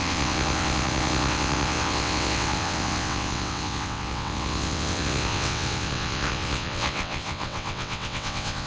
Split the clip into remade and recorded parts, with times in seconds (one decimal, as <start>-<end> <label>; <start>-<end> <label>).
0.0-8.7 remade